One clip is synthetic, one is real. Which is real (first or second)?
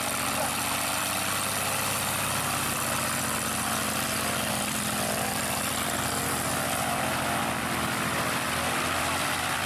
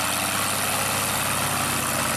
second